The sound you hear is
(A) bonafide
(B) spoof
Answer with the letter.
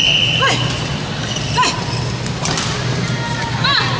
A